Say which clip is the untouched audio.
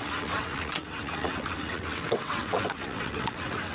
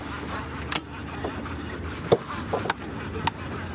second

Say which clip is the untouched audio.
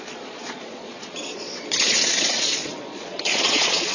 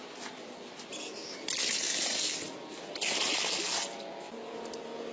second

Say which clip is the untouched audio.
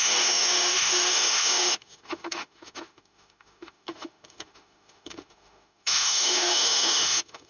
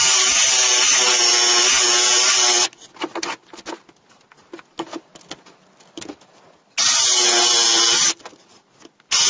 second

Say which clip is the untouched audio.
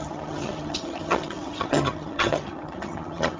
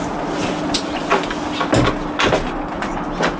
second